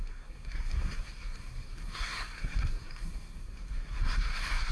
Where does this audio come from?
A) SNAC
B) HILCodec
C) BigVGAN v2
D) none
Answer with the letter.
A